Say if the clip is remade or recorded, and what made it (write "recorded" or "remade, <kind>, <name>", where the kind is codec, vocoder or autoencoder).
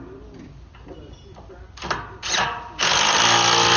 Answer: recorded